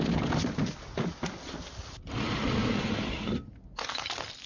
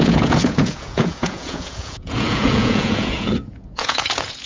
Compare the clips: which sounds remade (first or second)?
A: second